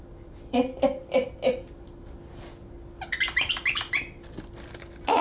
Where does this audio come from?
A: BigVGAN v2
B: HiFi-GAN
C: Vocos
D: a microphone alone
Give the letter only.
D